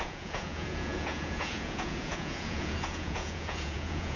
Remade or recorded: remade